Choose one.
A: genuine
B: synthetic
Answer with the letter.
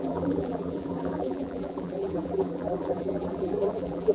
B